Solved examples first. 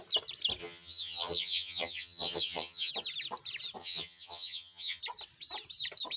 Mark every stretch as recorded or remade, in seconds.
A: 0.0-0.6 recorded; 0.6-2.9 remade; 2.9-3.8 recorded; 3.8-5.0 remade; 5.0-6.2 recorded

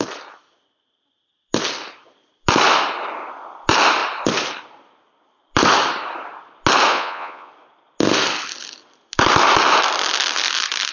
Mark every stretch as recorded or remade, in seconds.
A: 0.0-6.9 recorded; 6.9-7.5 remade; 7.5-10.9 recorded

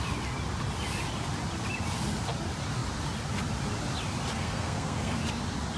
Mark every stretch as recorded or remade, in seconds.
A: 0.0-4.3 recorded; 4.3-5.2 remade; 5.2-5.8 recorded

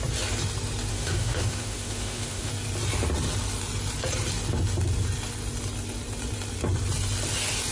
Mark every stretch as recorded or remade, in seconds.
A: 0.0-0.9 recorded; 0.9-2.5 remade; 2.5-7.7 recorded